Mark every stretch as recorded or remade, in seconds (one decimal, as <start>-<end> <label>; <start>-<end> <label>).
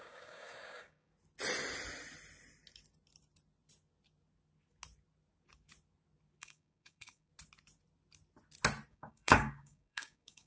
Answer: 0.0-1.1 remade; 1.1-6.4 recorded; 6.4-7.3 remade; 7.3-8.9 recorded; 8.9-10.5 remade